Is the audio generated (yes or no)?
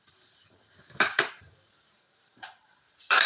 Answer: yes